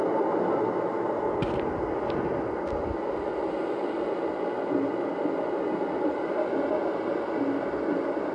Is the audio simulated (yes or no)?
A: no